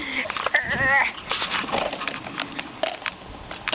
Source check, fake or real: real